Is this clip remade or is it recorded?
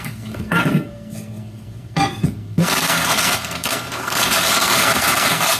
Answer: remade